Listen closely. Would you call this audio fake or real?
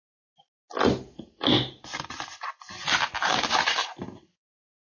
real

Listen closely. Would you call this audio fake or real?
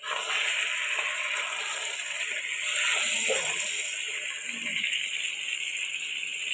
real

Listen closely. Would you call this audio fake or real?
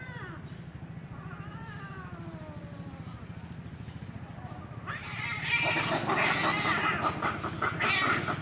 real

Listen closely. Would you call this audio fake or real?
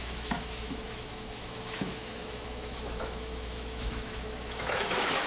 fake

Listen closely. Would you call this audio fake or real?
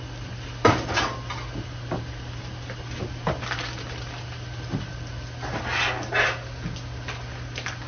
real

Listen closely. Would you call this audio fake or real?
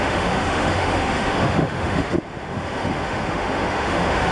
fake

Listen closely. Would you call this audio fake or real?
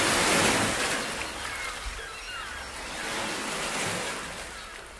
real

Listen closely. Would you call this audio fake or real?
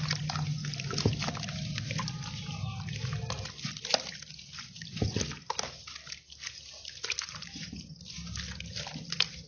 real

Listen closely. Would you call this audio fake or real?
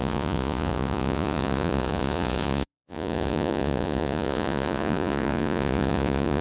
fake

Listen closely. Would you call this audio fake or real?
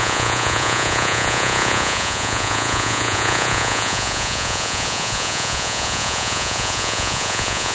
fake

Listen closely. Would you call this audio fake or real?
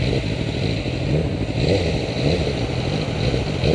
real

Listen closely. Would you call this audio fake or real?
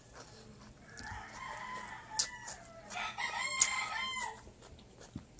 real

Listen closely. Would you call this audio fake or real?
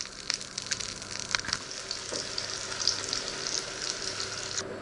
real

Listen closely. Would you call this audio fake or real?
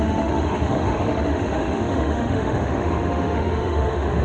fake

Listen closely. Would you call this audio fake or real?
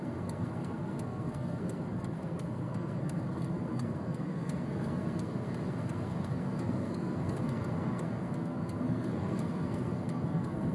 fake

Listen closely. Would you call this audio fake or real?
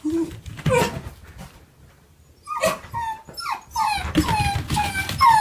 real